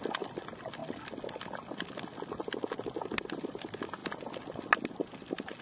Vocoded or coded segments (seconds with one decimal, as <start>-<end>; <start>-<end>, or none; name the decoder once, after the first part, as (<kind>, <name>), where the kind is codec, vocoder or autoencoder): none